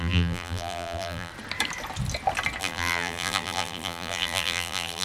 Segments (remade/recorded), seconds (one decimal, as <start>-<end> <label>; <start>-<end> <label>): 0.0-1.3 remade; 1.3-2.6 recorded; 2.6-5.0 remade